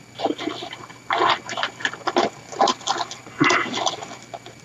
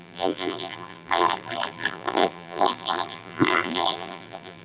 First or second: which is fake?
second